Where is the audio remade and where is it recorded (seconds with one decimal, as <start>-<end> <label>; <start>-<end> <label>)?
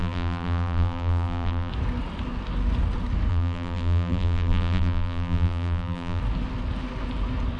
0.0-1.7 remade; 1.7-3.3 recorded; 3.3-6.2 remade; 6.2-7.6 recorded